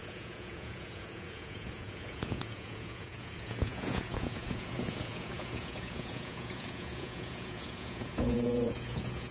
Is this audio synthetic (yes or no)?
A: yes